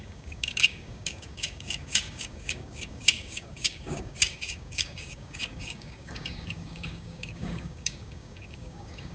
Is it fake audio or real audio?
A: fake